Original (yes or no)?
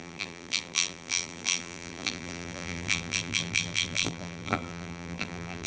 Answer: no